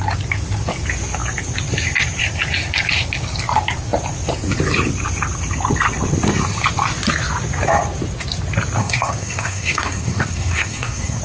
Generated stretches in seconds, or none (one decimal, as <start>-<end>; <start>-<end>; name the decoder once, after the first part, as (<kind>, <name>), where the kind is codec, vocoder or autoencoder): 8.8-11.2 (codec, SNAC)